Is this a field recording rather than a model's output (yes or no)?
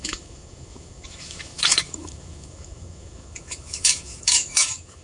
no